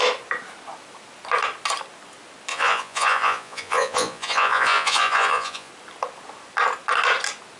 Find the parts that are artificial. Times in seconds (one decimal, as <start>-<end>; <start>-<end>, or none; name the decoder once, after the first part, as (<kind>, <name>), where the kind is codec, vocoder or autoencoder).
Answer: 2.5-5.7 (vocoder, Vocos)